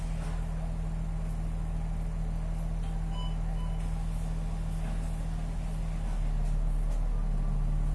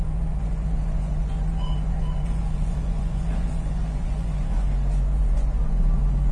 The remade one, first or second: second